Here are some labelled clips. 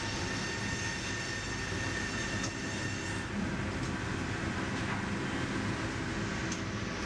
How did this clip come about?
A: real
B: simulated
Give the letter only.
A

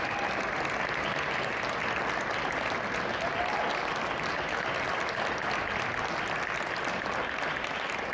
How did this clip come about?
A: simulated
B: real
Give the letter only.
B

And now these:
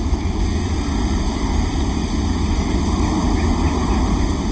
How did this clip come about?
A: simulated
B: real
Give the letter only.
B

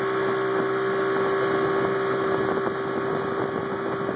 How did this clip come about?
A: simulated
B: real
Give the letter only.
B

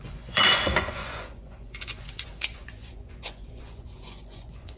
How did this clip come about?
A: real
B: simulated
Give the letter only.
B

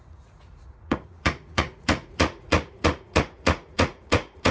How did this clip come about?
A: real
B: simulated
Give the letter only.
B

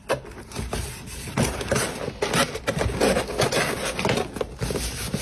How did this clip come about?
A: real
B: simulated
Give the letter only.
A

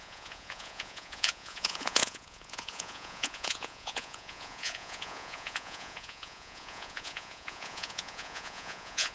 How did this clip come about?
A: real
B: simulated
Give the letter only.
B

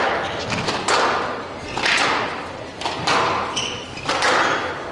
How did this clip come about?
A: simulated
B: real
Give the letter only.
B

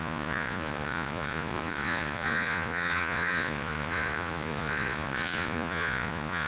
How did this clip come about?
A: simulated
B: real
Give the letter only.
A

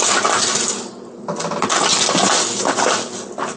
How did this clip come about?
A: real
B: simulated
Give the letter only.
A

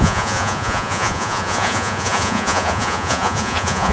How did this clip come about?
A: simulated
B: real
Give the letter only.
A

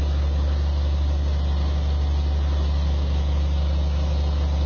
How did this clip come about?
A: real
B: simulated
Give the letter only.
A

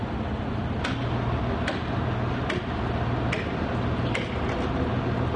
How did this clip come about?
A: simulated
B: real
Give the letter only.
B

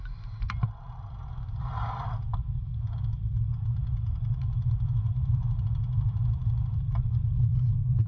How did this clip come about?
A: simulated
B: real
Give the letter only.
B